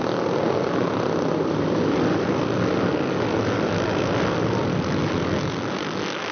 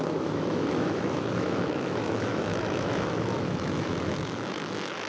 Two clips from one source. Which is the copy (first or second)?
second